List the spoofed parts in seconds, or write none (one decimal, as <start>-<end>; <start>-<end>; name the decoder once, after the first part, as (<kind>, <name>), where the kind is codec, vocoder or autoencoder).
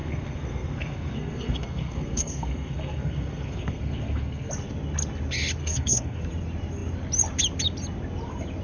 0.0-4.5 (codec, SNAC); 5.6-6.2